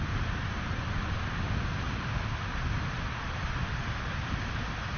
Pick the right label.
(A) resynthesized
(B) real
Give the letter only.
B